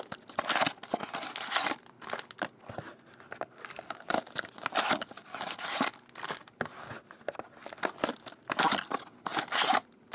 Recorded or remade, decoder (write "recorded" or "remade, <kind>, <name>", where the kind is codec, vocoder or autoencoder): recorded